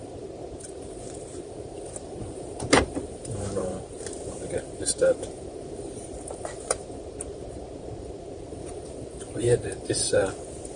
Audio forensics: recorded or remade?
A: remade